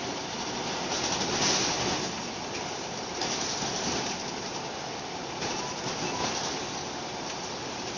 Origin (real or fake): real